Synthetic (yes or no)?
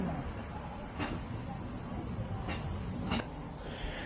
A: no